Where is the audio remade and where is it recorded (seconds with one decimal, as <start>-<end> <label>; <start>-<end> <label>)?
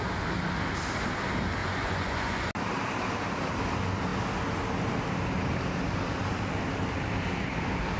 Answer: 0.0-1.6 recorded; 1.6-2.5 remade; 2.5-8.0 recorded